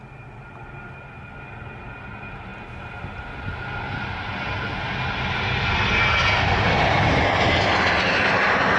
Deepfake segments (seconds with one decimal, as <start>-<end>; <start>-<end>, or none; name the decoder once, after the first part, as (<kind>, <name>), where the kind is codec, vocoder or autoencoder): none